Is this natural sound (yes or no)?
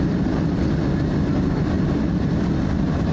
yes